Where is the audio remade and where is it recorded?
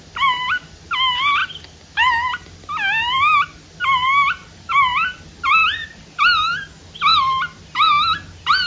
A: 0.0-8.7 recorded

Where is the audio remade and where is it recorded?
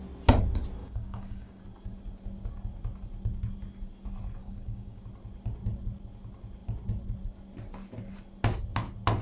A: 0.0-0.8 recorded; 0.8-1.6 remade; 1.6-4.4 recorded; 4.4-5.0 remade; 5.0-9.2 recorded